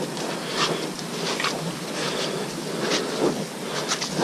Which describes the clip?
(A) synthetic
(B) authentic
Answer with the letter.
B